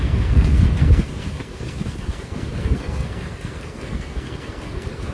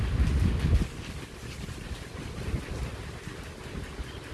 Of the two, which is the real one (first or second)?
second